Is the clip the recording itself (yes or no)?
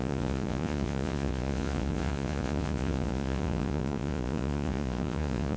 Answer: no